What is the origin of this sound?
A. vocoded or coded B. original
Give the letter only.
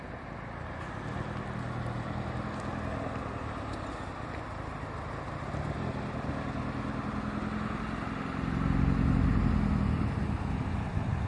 B